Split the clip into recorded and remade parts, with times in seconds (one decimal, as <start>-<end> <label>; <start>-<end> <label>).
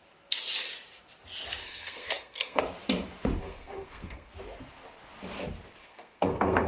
0.0-1.6 recorded; 1.6-2.6 remade; 2.6-3.4 recorded; 3.4-4.3 remade; 4.3-5.8 recorded; 5.8-6.7 remade